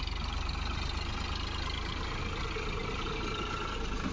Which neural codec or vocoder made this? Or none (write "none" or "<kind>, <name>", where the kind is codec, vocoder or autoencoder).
none